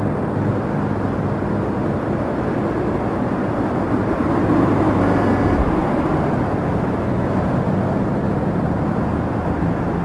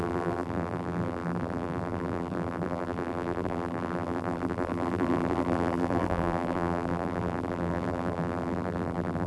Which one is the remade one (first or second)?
second